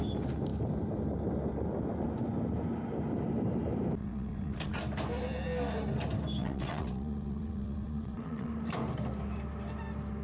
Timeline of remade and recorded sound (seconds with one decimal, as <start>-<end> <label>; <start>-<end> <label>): 0.0-4.0 recorded; 4.0-4.8 remade; 4.8-6.4 recorded; 6.4-8.5 remade; 8.5-10.2 recorded